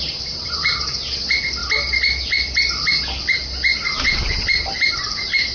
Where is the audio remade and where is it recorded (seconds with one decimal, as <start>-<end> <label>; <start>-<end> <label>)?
0.0-1.6 remade; 1.6-4.8 recorded; 4.8-5.5 remade